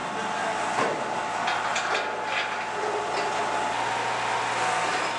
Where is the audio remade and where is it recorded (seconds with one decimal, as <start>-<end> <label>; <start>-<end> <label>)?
0.0-5.2 recorded